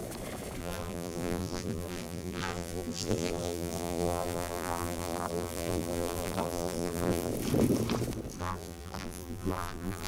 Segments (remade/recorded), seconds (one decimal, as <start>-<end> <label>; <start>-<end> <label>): 0.0-0.6 recorded; 0.6-7.3 remade; 7.3-8.4 recorded; 8.4-10.1 remade